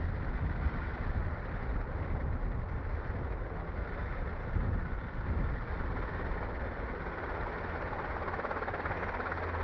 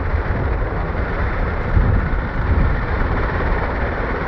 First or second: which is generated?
second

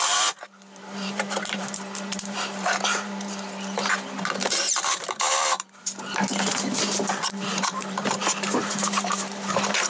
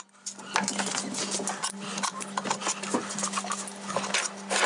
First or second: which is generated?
first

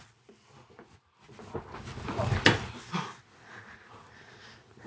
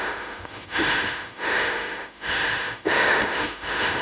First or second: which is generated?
second